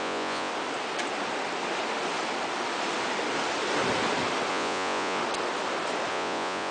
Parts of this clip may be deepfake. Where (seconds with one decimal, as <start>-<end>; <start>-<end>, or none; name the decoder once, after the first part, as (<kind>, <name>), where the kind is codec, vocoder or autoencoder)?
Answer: 0.0-0.5 (vocoder, Vocos); 4.5-5.2; 6.1-6.7